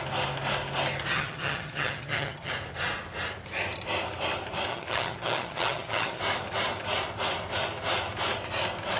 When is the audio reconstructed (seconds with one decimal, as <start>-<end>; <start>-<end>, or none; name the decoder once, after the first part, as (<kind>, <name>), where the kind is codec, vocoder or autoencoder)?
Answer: 1.1-2.5 (vocoder, HiFi-GAN); 4.7-6.2